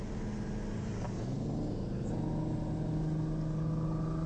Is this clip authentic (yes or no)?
yes